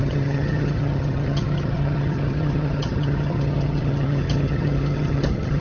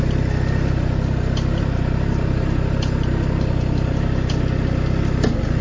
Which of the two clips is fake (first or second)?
first